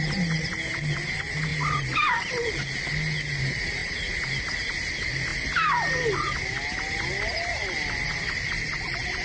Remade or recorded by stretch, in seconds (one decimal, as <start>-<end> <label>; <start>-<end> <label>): 0.0-1.5 recorded; 1.5-2.5 remade; 2.5-3.8 recorded; 3.8-4.7 remade; 4.7-9.2 recorded

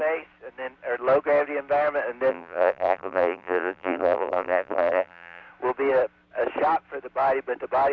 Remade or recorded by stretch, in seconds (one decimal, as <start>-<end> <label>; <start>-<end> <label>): 0.0-2.3 recorded; 2.3-5.4 remade; 5.4-7.9 recorded